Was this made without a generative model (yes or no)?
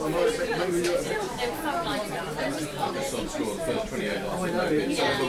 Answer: no